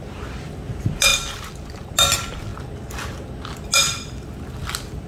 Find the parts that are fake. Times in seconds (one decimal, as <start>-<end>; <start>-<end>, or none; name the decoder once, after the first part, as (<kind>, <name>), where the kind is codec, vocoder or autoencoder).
none